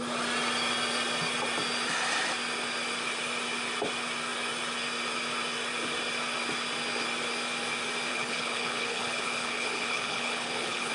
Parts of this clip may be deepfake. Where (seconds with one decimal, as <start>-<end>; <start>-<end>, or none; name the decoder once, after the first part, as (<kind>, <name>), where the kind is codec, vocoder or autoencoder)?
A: 8.1-10.9 (codec, HILCodec)